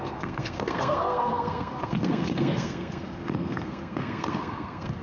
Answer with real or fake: fake